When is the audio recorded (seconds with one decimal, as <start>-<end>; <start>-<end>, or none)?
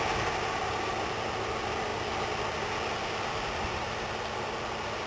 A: 0.0-5.1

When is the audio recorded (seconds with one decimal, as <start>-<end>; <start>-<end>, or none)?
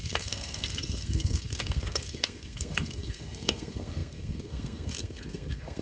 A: none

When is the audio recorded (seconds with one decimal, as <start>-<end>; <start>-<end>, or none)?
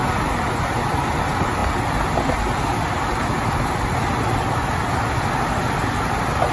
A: 0.0-6.5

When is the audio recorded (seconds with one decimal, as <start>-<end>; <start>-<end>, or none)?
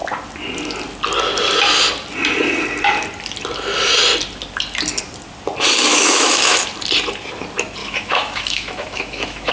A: 0.0-5.9; 6.6-7.8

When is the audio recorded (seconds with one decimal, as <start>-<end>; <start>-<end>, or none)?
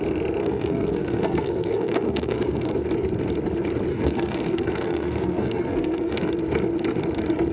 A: 0.0-0.4; 2.7-3.9; 6.3-7.5